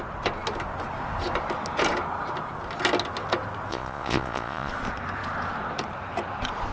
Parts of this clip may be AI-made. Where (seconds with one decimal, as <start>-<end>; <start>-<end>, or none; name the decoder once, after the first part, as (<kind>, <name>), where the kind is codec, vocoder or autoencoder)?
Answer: 3.7-4.7 (vocoder, Vocos)

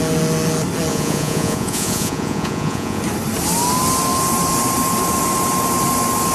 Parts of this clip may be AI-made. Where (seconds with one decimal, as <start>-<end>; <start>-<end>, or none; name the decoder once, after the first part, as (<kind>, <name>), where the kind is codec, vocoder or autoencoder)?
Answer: 0.9-3.0 (vocoder, Vocos)

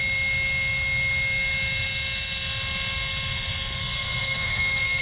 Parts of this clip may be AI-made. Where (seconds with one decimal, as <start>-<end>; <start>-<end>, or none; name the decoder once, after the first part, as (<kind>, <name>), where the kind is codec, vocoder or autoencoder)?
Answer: 3.8-5.0 (codec, SNAC)

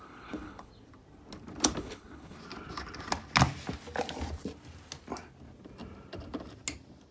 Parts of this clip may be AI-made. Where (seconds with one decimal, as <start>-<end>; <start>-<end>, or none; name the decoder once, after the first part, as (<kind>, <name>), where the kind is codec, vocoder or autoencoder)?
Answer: 0.0-0.7 (codec, HILCodec); 1.8-2.4

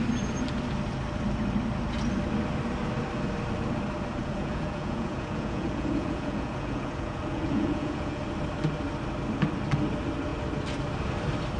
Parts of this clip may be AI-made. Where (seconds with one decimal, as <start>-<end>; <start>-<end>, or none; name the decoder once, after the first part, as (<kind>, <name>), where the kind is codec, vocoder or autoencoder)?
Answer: 4.2-8.2 (vocoder, Vocos)

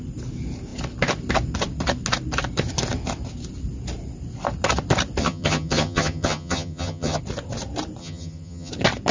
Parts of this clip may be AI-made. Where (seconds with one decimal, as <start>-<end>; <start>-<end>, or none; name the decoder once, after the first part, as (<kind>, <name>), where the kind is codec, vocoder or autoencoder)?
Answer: 5.2-7.2 (vocoder, HiFi-GAN); 8.0-8.7

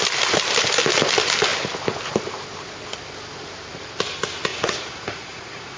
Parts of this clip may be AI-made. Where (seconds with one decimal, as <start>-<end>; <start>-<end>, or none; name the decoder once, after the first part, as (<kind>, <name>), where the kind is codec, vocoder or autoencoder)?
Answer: 4.5-5.8 (vocoder, Vocos)

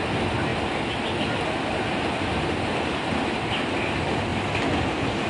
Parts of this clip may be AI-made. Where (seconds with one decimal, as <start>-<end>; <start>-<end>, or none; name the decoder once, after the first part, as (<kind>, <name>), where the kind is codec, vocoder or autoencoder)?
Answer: none